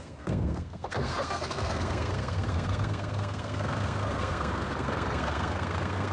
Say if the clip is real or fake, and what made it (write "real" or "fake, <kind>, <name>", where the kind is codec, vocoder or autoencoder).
fake, codec, SNAC